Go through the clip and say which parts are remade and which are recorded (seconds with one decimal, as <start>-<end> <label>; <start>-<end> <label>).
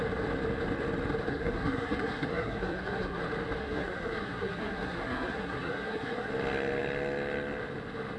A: 0.0-1.3 recorded; 1.3-3.2 remade; 3.2-3.6 recorded; 3.6-6.3 remade; 6.3-8.2 recorded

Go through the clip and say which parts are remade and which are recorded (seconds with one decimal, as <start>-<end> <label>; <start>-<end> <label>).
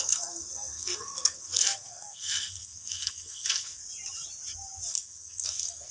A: 0.0-3.8 remade; 3.8-4.9 recorded; 4.9-5.9 remade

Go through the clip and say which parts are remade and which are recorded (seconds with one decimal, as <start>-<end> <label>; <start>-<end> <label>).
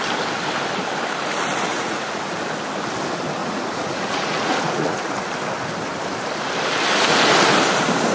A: 0.0-1.7 recorded; 1.7-2.3 remade; 2.3-3.4 recorded; 3.4-5.1 remade; 5.1-8.1 recorded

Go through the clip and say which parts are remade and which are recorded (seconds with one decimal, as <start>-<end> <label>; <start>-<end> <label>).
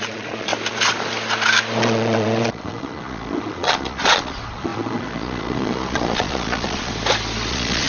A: 0.0-0.5 remade; 0.5-1.8 recorded; 1.8-6.9 remade; 6.9-7.5 recorded; 7.5-7.9 remade